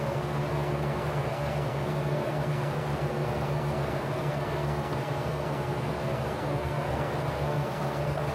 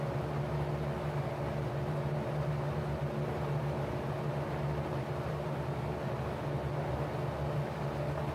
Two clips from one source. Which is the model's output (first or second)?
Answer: first